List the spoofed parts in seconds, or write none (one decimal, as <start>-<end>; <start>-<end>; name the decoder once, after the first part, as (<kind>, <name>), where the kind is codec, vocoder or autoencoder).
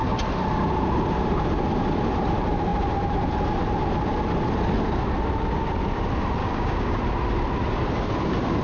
6.4-7.0 (codec, DAC)